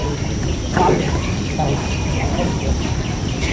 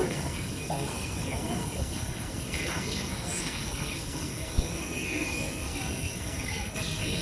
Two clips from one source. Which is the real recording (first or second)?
first